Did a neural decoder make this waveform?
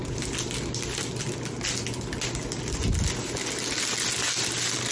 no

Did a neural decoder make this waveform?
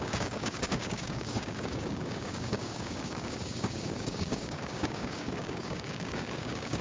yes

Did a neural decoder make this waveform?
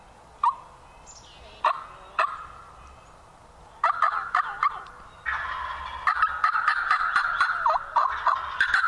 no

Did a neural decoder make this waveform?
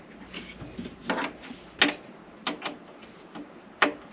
no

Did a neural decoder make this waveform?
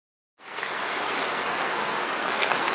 yes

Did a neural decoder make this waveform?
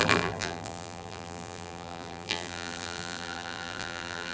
yes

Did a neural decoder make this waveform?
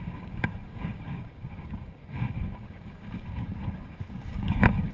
yes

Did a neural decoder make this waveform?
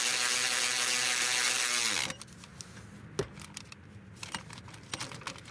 no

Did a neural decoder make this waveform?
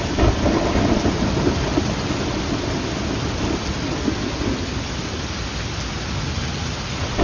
no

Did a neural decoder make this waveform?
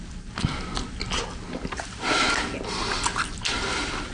no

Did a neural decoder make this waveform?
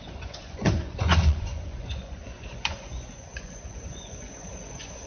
yes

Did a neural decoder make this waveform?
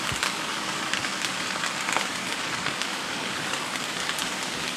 yes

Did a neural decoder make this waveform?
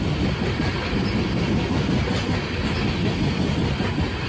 no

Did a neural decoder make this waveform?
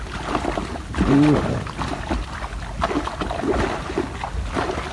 no